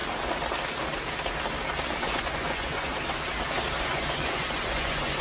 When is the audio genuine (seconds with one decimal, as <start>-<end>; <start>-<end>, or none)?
0.0-2.0; 2.9-3.8